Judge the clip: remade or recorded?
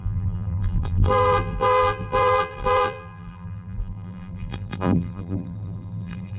remade